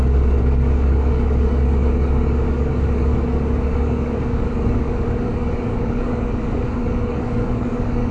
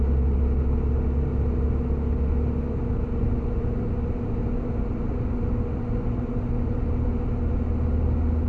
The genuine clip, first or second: second